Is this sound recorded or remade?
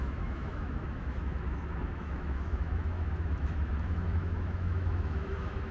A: remade